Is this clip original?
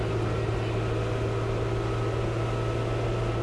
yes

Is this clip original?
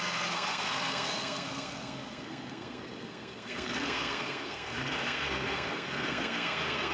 no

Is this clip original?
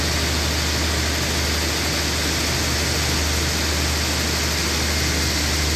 yes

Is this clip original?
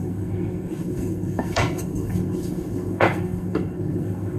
no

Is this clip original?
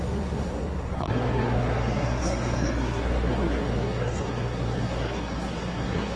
no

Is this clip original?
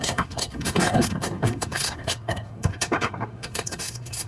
no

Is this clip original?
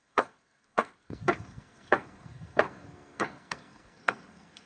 no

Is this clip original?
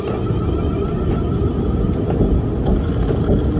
yes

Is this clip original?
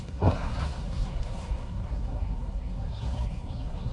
no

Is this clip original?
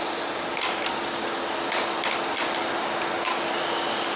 yes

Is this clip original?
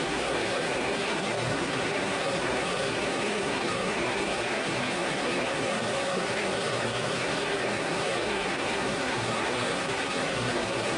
no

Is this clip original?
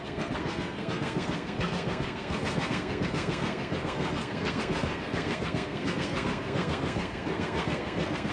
no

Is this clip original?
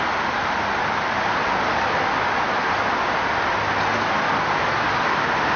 yes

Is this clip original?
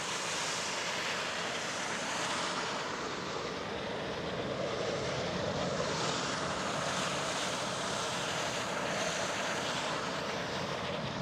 yes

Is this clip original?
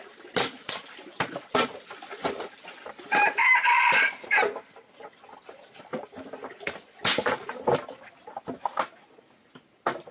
yes